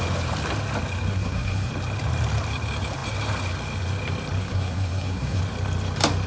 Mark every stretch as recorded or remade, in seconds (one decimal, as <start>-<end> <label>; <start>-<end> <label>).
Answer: 0.0-1.1 recorded; 1.1-1.7 remade; 1.7-4.4 recorded; 4.4-5.4 remade; 5.4-6.3 recorded

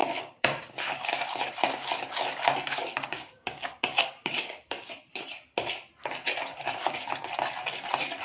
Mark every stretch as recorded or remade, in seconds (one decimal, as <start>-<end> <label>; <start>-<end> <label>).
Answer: 0.0-4.9 remade; 4.9-6.5 recorded; 6.5-7.1 remade; 7.1-8.2 recorded

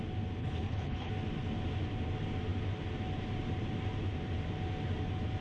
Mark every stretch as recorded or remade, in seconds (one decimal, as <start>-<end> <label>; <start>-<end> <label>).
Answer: 0.0-0.4 recorded; 0.4-1.1 remade; 1.1-5.4 recorded

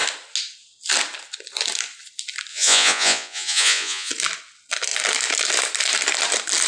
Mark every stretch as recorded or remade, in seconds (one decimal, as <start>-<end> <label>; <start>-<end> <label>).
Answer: 0.0-2.5 recorded; 2.5-4.1 remade; 4.1-6.7 recorded

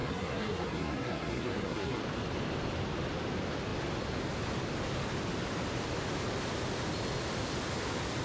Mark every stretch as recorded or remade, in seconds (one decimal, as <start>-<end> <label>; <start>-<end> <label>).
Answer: 0.0-2.0 remade; 2.0-8.2 recorded

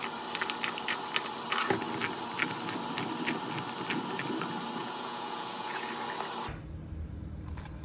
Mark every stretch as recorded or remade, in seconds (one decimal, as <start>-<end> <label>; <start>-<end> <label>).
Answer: 0.0-4.8 recorded; 4.8-5.9 remade; 5.9-7.8 recorded